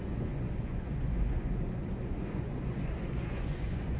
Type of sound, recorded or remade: remade